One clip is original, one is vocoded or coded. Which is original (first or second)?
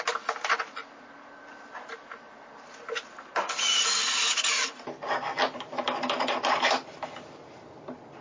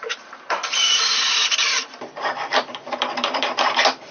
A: first